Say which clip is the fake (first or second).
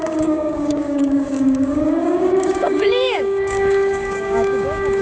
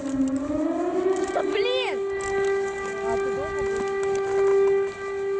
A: first